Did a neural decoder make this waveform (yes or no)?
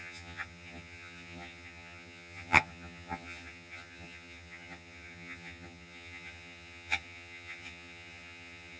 yes